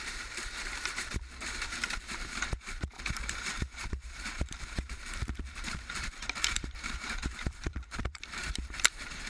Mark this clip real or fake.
fake